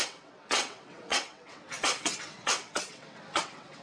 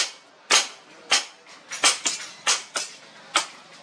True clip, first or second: second